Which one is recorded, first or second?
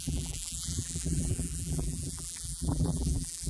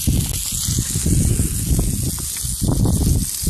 second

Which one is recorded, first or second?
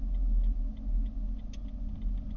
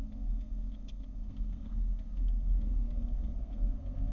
first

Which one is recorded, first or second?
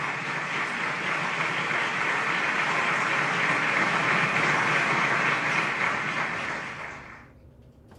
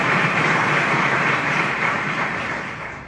first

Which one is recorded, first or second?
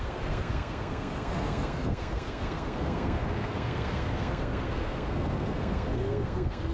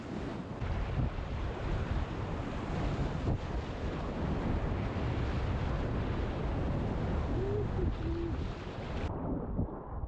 second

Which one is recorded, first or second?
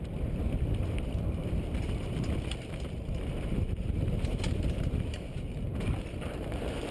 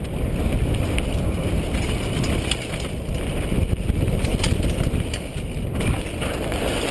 second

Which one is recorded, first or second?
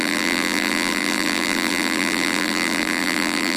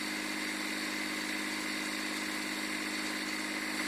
second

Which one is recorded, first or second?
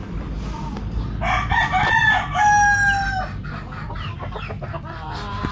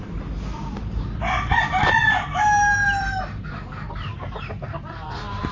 first